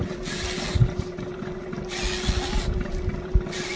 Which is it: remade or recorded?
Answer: recorded